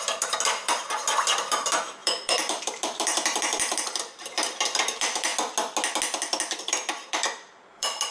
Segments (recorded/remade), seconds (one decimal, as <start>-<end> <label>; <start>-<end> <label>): 0.0-5.3 remade; 5.3-6.6 recorded; 6.6-8.1 remade